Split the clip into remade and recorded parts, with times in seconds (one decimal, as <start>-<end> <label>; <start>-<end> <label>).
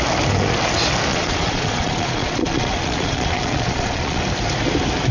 0.0-1.1 recorded; 1.1-4.2 remade; 4.2-5.1 recorded